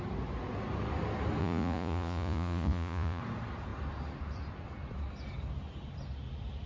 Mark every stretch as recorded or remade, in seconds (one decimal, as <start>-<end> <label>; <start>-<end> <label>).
0.0-1.4 recorded; 1.4-3.2 remade; 3.2-6.7 recorded